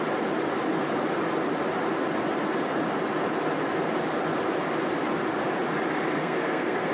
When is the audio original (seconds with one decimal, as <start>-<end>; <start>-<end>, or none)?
0.0-6.2